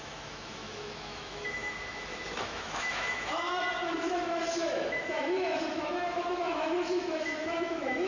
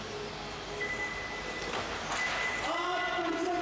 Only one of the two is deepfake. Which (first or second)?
first